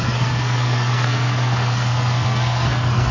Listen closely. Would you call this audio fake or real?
fake